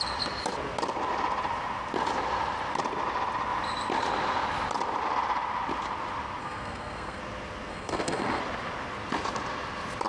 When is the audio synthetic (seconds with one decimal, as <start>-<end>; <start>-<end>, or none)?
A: 6.4-7.2; 7.7-8.4